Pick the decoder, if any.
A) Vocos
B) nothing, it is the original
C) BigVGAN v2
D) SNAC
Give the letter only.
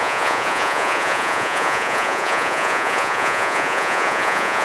A